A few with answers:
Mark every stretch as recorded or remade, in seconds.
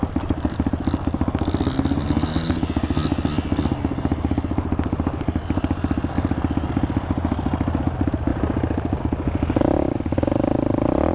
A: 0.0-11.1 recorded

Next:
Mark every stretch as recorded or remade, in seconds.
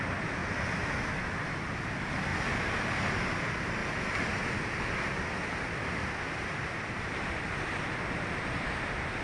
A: 0.0-2.3 recorded; 2.3-3.1 remade; 3.1-6.0 recorded; 6.0-9.2 remade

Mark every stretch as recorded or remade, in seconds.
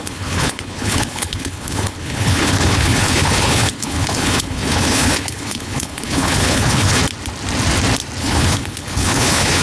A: 0.0-7.0 remade; 7.0-8.2 recorded; 8.2-9.6 remade